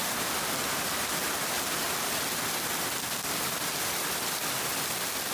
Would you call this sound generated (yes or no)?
no